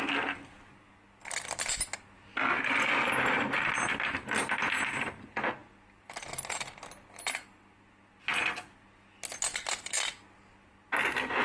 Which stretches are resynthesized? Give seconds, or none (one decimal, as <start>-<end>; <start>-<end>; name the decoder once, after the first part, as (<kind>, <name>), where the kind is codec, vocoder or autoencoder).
none